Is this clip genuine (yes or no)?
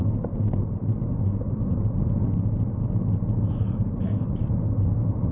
yes